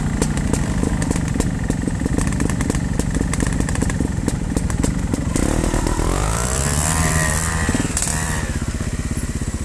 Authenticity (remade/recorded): recorded